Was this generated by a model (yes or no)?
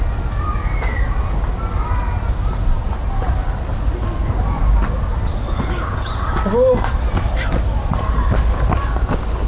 no